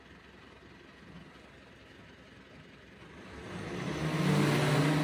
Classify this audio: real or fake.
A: real